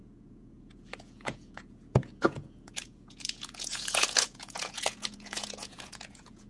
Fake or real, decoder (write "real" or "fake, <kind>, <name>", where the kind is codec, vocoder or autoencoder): fake, vocoder, Vocos